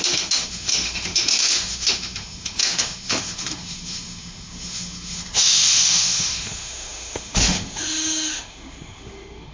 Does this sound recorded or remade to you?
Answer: remade